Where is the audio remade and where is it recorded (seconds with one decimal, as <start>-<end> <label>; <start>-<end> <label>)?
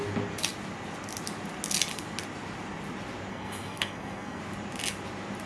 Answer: 0.0-3.3 recorded; 3.3-4.4 remade; 4.4-5.5 recorded